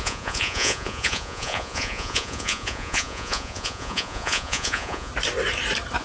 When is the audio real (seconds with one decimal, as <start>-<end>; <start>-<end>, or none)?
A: 5.1-6.0